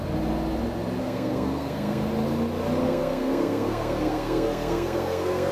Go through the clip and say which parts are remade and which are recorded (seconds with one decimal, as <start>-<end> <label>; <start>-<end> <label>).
0.0-1.0 recorded; 1.0-2.1 remade; 2.1-2.8 recorded; 2.8-5.5 remade